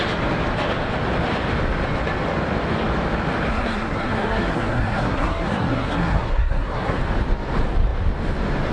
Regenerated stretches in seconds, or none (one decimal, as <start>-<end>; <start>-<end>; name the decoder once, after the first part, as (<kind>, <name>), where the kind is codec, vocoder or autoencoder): 3.5-7.0 (codec, SNAC)